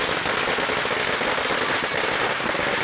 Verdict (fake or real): real